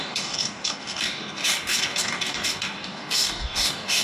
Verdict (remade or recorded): remade